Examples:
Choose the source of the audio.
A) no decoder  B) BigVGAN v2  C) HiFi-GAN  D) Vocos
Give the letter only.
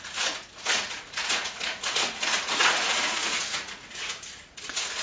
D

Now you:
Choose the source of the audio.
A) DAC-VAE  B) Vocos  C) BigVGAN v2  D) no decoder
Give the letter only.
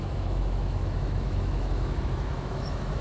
A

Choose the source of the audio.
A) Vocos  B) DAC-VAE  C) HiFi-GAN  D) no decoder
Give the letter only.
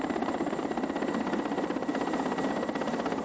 D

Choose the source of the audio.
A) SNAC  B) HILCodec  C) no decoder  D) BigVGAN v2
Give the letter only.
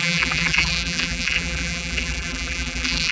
D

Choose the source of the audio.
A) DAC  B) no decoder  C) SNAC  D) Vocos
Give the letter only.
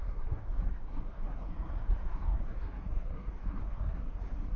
C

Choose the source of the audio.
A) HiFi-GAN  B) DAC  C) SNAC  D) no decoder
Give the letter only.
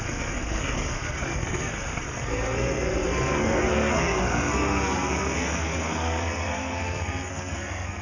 C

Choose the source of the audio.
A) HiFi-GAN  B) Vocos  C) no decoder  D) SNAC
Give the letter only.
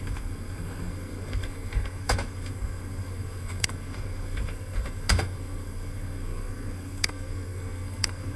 D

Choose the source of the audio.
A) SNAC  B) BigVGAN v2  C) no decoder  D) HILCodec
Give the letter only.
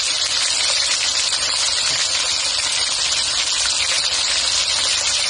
C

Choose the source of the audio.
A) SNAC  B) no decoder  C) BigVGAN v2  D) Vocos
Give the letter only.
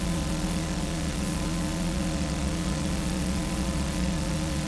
D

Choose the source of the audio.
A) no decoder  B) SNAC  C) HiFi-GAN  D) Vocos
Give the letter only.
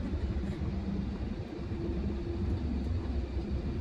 A